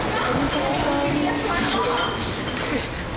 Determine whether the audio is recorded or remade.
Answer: recorded